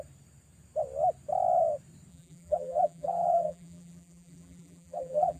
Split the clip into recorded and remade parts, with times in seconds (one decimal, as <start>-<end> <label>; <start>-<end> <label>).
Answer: 0.0-2.1 recorded; 2.1-5.4 remade